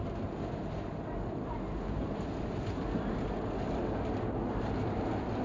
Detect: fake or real real